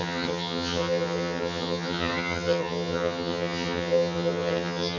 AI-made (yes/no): yes